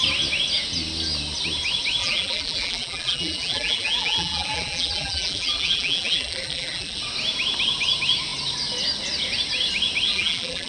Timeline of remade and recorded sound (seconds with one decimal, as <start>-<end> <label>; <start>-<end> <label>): 0.0-2.0 recorded; 2.0-7.0 remade; 7.0-10.1 recorded; 10.1-10.7 remade